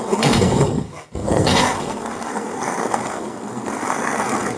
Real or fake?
fake